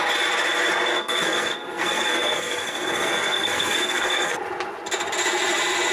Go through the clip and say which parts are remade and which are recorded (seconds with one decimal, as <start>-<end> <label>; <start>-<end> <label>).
0.0-0.9 recorded; 0.9-4.4 remade; 4.4-5.9 recorded